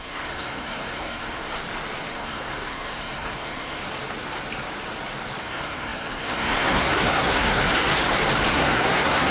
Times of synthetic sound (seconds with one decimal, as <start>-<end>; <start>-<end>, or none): 0.0-1.6; 2.1-3.8; 5.4-8.0; 8.5-9.3